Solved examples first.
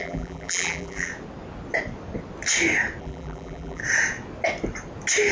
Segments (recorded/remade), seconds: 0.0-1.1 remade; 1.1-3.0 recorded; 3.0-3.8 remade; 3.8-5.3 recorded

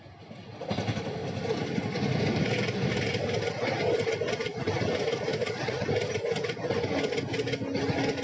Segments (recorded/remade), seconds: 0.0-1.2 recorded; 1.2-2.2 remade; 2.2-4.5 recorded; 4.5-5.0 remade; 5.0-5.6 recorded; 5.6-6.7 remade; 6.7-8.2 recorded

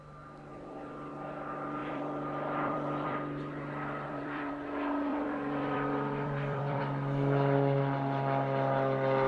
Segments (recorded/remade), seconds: 0.0-0.5 recorded; 0.5-1.1 remade; 1.1-1.8 recorded; 1.8-4.5 remade; 4.5-5.1 recorded; 5.1-6.8 remade; 6.8-9.3 recorded

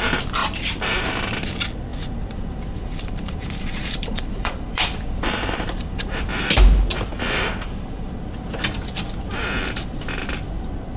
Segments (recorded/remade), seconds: 0.0-1.9 recorded; 1.9-6.2 remade; 6.2-7.1 recorded; 7.1-8.2 remade; 8.2-11.0 recorded

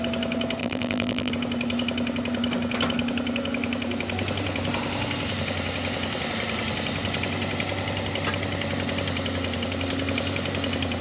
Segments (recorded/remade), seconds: 0.0-0.6 recorded; 0.6-1.3 remade; 1.3-11.0 recorded